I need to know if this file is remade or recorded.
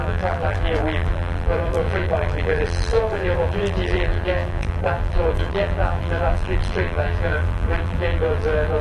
remade